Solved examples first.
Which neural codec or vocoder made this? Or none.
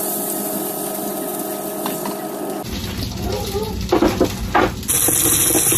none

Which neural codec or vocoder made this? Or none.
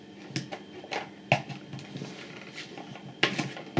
none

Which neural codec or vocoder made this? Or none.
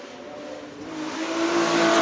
none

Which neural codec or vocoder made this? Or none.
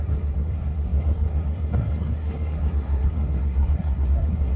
codec, SNAC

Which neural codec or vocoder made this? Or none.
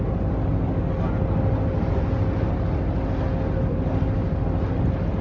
none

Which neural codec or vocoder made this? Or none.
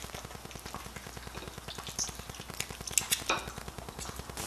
none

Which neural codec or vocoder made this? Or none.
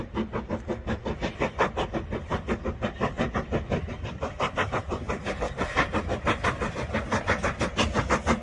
none